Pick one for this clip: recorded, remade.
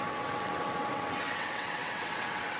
remade